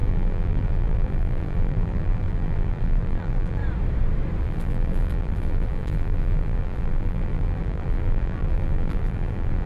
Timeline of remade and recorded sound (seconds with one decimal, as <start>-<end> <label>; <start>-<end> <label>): 0.0-3.6 remade; 3.6-4.4 recorded; 4.4-9.7 remade

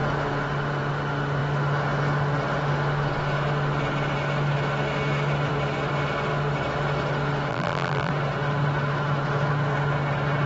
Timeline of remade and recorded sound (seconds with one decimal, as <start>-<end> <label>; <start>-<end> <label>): 0.0-7.5 recorded; 7.5-8.1 remade; 8.1-10.5 recorded